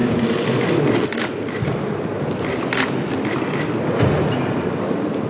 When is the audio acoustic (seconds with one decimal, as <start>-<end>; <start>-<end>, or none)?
0.0-5.3